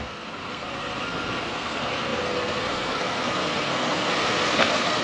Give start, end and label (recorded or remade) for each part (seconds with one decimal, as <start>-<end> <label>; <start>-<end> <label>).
0.0-5.0 remade